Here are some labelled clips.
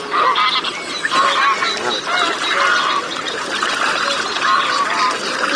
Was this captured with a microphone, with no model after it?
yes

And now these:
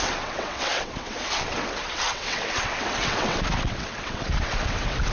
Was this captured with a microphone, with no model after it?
no